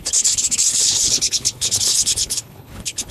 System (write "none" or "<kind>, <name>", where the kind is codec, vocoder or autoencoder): codec, HILCodec